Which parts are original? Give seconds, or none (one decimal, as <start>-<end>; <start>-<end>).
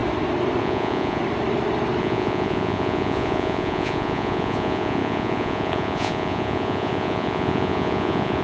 0.0-0.6; 1.2-2.0